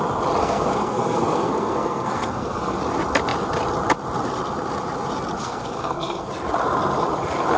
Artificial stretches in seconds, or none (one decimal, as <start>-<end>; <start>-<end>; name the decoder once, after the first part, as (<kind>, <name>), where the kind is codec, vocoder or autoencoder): 0.4-2.8 (codec, SNAC); 5.4-6.3